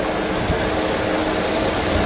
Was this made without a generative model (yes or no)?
yes